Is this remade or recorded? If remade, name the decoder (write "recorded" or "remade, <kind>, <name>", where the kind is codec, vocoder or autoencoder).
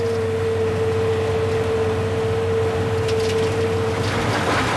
recorded